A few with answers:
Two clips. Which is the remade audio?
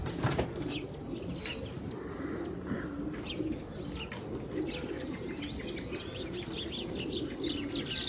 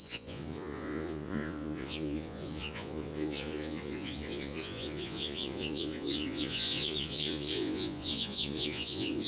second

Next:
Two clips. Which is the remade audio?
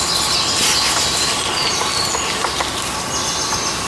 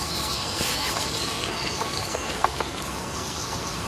second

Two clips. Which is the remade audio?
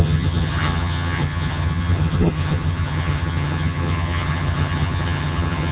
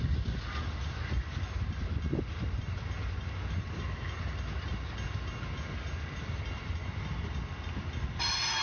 first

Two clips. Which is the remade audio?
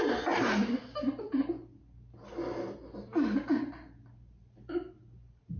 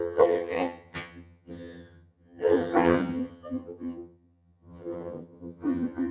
second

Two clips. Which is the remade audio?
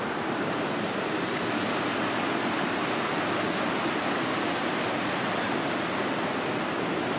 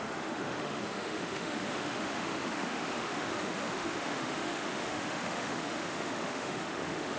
second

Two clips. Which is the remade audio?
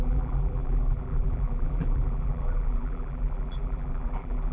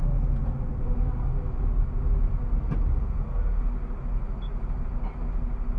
first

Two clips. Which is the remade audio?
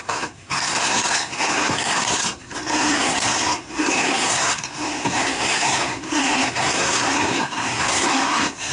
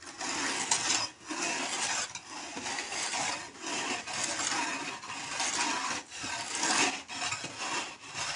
first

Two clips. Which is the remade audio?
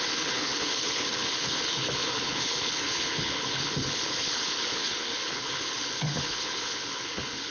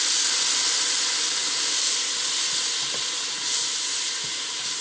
first